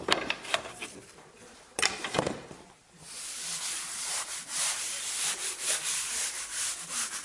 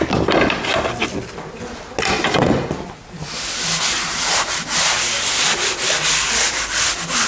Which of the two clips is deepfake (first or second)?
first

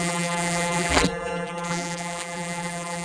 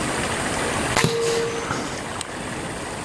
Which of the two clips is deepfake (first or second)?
first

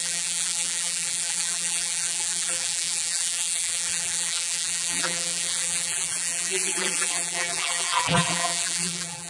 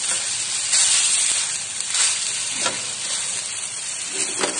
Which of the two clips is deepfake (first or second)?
first